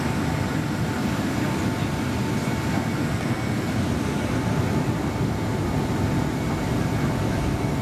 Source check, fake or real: real